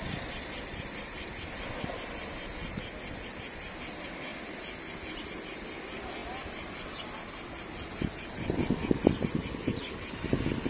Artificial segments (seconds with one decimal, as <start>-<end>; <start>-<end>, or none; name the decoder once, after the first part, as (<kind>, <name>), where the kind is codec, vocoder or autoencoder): none